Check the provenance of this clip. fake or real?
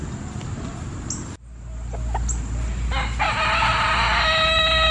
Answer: real